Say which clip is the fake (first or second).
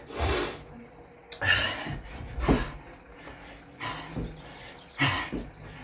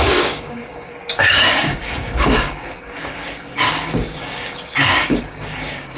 second